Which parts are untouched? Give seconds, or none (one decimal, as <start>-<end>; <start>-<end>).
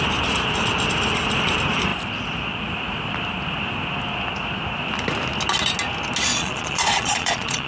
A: 0.0-6.3